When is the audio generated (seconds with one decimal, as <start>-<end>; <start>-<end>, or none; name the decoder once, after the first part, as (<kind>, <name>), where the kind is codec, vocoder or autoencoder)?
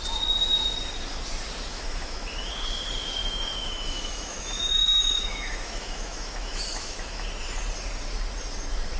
1.7-2.5 (autoencoder, DAC-VAE); 3.2-7.3